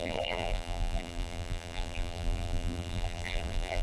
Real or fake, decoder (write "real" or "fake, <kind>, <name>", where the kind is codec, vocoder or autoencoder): fake, vocoder, BigVGAN v2